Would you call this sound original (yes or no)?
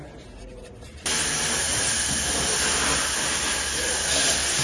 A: yes